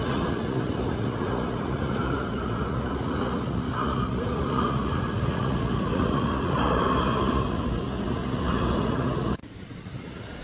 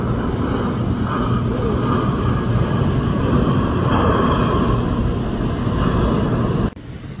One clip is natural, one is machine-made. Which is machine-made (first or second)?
first